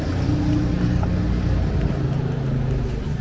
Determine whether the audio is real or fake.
real